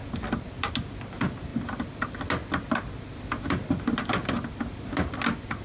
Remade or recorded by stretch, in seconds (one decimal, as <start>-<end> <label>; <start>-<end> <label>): 0.0-5.6 recorded